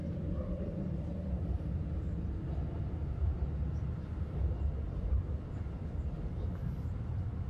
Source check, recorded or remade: recorded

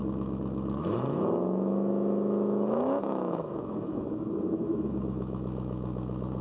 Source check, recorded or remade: remade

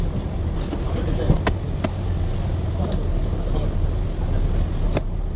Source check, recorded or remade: recorded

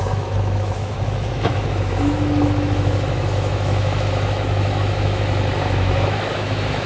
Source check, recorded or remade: remade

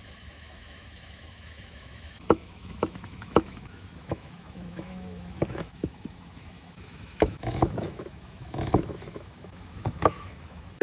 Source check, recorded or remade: remade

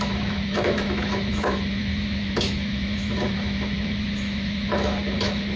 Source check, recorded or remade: remade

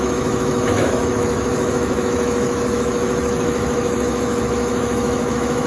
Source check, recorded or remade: remade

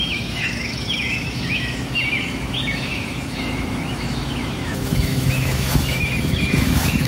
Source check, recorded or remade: remade